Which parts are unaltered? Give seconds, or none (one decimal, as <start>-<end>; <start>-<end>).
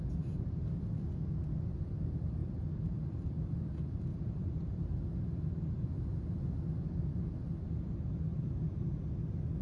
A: 0.0-2.4; 3.0-4.1; 4.8-9.6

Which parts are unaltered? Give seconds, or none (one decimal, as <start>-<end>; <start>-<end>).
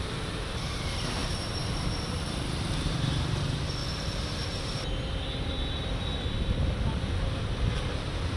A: 3.8-7.6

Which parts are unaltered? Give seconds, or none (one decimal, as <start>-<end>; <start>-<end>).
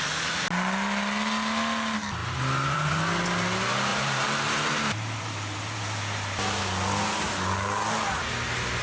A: 0.0-2.2; 2.9-3.9; 6.6-8.8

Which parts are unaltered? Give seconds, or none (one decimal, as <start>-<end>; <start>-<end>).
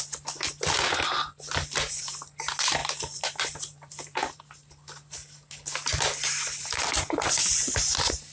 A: 0.0-2.8; 4.4-8.3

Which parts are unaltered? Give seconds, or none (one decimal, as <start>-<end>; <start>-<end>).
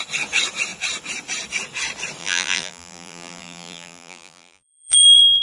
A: 0.0-2.2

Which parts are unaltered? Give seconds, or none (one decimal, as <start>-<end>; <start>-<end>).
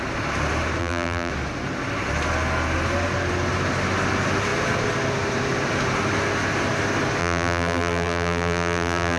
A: 0.0-0.8; 1.3-7.2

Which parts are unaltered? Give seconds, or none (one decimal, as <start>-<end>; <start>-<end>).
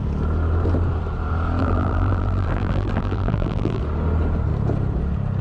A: 0.0-1.6; 3.8-5.4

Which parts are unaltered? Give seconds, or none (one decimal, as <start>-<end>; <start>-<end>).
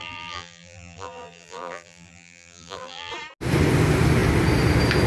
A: 3.1-5.1